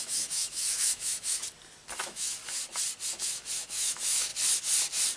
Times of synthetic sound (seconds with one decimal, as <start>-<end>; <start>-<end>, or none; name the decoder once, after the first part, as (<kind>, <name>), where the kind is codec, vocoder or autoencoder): 0.0-1.4 (autoencoder, DAC-VAE); 2.0-2.4; 3.1-4.3